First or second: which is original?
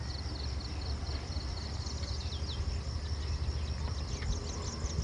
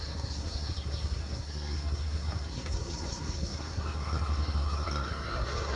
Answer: first